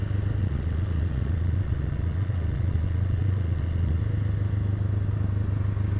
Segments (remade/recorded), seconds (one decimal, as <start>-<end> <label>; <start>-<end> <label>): 0.0-0.4 recorded; 0.4-4.0 remade; 4.0-6.0 recorded